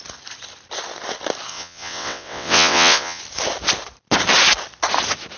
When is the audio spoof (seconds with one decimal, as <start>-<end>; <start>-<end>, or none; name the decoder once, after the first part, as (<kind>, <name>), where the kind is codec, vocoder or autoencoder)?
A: 1.5-3.2 (vocoder, WaveNeXt)